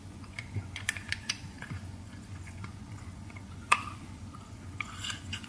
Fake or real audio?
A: fake